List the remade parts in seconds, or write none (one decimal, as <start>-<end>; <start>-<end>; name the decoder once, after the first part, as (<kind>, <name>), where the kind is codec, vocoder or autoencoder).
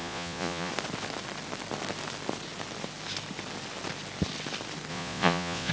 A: 0.0-0.7 (vocoder, Vocos); 4.9-5.7